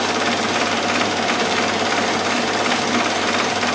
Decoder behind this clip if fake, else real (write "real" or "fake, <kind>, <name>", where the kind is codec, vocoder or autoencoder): real